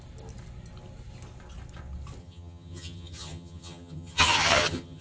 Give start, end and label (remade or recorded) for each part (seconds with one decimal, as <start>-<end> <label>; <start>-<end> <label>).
0.0-2.2 recorded; 2.2-5.0 remade